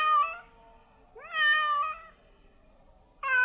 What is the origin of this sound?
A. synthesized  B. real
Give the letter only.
B